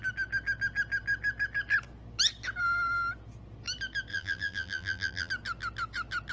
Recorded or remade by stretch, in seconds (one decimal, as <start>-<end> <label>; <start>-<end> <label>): 0.0-4.1 recorded; 4.1-5.3 remade; 5.3-6.3 recorded